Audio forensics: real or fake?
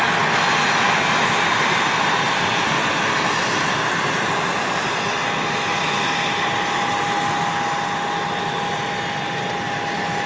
real